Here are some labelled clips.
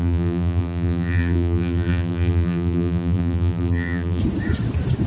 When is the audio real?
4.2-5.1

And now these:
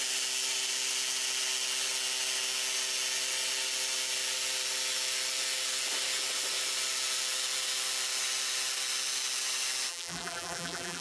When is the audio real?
0.0-9.9

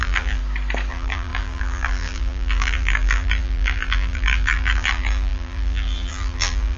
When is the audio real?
0.4-0.9